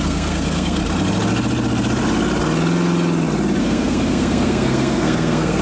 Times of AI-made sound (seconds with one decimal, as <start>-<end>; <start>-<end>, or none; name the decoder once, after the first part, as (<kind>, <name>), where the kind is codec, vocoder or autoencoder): 0.0-0.8 (codec, SNAC); 3.6-5.6